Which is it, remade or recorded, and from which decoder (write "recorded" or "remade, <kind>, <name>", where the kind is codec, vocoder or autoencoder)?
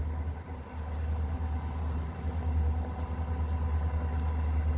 recorded